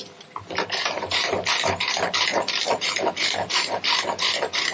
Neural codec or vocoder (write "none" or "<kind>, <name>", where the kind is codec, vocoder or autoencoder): vocoder, BigVGAN v2